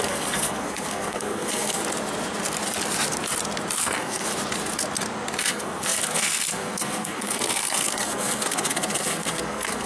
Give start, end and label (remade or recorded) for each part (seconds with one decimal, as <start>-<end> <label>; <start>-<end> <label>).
0.0-1.8 remade; 1.8-3.8 recorded; 3.8-4.3 remade; 4.3-5.4 recorded; 5.4-9.9 remade